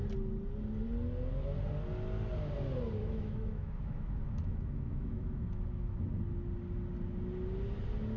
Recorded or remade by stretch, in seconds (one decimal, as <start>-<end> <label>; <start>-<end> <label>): 0.0-3.0 recorded; 3.0-6.0 remade; 6.0-8.2 recorded